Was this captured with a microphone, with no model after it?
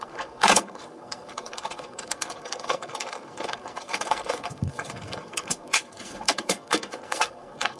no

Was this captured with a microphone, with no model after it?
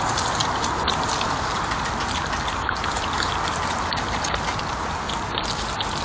yes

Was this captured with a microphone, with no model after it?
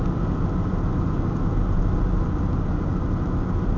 yes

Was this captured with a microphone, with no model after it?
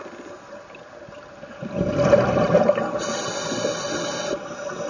yes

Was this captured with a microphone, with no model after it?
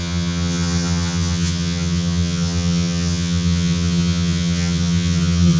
no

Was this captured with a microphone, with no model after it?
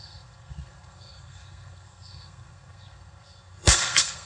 no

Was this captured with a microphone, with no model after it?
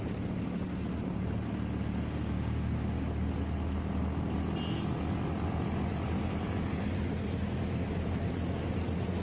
yes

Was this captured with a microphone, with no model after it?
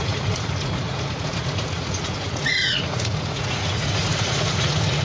no